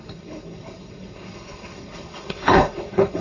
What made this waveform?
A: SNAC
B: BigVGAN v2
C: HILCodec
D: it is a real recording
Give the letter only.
C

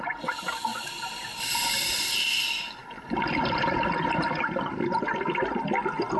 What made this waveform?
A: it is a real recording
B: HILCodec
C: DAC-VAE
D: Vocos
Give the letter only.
A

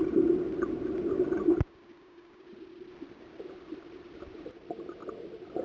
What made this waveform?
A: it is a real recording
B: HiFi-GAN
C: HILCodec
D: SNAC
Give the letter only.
A